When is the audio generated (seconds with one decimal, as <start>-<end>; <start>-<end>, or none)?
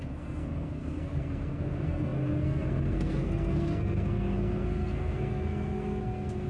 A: 0.0-6.5